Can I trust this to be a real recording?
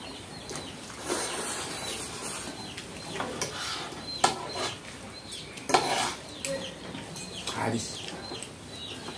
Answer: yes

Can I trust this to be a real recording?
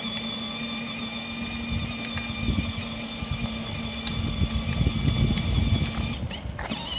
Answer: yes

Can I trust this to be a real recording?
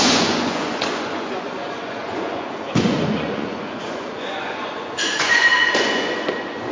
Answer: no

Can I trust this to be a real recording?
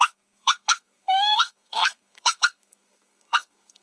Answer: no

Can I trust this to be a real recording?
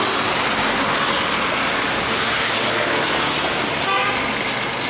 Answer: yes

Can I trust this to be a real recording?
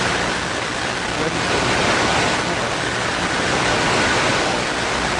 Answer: yes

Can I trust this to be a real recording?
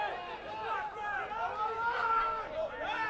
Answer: yes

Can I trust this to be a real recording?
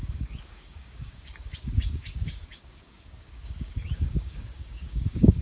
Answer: no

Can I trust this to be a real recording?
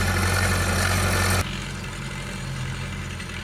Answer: yes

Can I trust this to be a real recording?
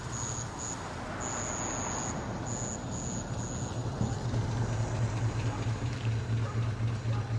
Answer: yes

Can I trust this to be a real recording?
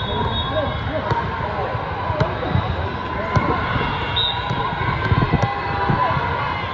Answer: yes